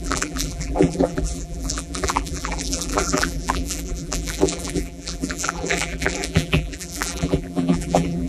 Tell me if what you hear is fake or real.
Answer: fake